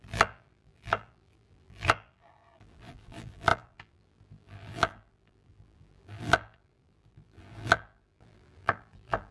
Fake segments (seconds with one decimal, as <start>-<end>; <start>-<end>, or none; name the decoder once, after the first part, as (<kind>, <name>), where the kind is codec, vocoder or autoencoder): 0.0-9.3 (vocoder, BigVGAN v2)